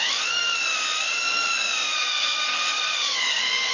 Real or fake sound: fake